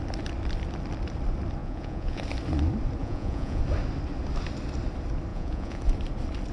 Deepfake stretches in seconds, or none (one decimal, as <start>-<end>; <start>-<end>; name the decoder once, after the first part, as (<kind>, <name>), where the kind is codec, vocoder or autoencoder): 1.6-2.2 (vocoder, Vocos); 3.0-3.6; 5.3-5.8